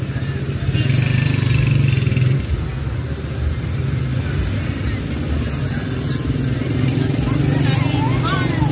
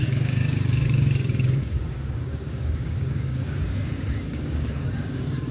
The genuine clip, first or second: first